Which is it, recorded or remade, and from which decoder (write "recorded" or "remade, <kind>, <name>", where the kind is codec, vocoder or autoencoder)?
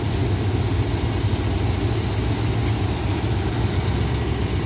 recorded